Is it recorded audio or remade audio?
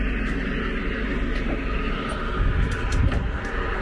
recorded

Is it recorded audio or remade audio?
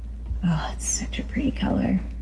recorded